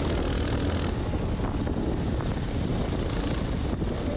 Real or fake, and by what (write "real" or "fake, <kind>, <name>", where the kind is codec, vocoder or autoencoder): real